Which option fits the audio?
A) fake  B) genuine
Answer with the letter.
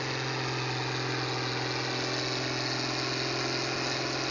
B